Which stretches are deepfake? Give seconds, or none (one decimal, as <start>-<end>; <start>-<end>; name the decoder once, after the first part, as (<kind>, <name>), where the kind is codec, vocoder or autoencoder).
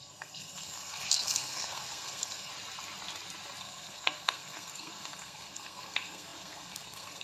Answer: 0.0-2.5 (codec, SNAC); 3.6-7.2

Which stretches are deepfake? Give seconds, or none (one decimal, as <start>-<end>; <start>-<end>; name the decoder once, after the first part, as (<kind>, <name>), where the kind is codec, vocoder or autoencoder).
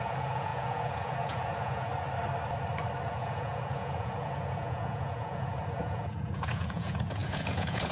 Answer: 0.0-1.9 (vocoder, Vocos); 3.1-7.9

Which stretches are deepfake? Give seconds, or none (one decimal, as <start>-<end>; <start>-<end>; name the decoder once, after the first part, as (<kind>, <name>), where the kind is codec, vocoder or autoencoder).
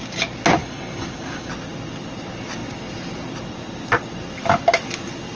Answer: 0.6-1.5 (codec, DAC)